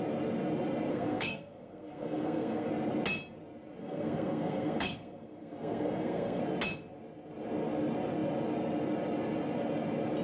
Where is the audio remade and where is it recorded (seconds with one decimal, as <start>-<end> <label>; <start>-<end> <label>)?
0.0-0.9 recorded; 0.9-2.7 remade; 2.7-3.8 recorded; 3.8-6.4 remade; 6.4-10.2 recorded